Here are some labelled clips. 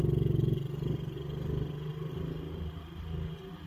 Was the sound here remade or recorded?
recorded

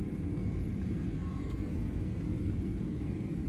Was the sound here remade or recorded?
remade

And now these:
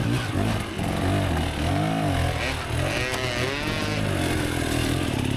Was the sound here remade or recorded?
recorded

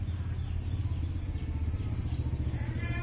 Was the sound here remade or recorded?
recorded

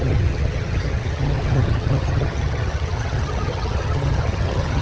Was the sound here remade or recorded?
remade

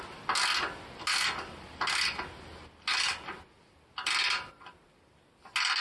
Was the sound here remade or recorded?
recorded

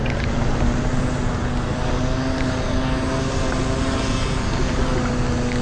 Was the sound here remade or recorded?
recorded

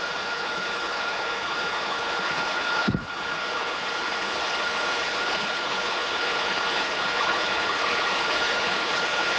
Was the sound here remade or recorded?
remade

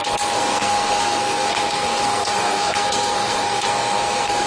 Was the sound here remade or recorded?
remade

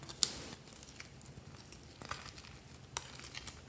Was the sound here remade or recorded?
recorded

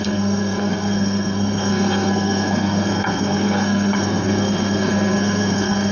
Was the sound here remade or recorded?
remade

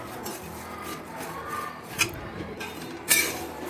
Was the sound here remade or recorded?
remade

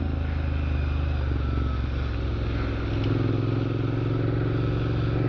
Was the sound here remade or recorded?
recorded